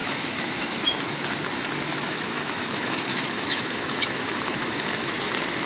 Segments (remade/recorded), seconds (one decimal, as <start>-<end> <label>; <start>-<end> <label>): 0.0-1.3 remade; 1.3-1.9 recorded; 1.9-5.1 remade; 5.1-5.7 recorded